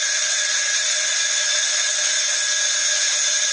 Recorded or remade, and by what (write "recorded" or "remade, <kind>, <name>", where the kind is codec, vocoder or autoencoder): recorded